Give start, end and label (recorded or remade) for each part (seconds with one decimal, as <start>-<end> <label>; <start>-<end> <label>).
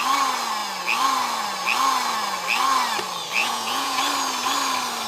0.0-3.4 recorded; 3.4-4.0 remade; 4.0-5.1 recorded